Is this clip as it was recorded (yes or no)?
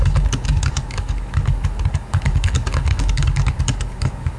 no